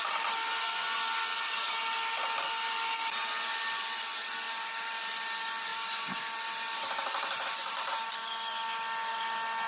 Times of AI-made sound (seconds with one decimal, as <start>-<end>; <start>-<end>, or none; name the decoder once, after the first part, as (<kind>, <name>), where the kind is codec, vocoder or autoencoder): none